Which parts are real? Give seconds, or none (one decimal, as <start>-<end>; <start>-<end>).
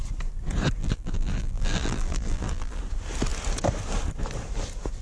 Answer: 0.0-0.8; 2.8-5.0